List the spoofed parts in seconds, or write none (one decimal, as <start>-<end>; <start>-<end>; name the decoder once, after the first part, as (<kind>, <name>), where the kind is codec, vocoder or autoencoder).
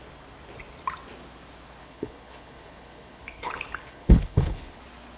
1.8-4.8 (codec, HILCodec)